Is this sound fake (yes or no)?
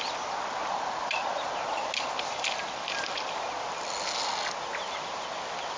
no